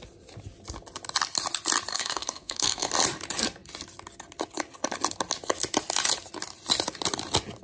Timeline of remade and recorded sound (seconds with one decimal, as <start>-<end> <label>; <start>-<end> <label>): 0.0-1.9 recorded; 1.9-2.9 remade; 2.9-7.6 recorded